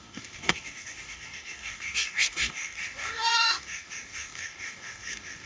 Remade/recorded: remade